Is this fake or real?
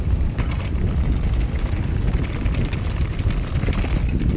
real